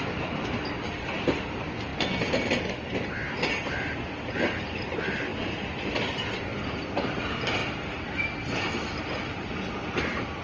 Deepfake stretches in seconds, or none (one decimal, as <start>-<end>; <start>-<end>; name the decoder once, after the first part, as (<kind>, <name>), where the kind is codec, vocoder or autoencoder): none